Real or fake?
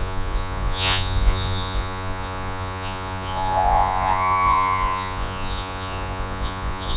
fake